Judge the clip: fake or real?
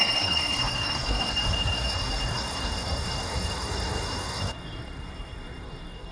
fake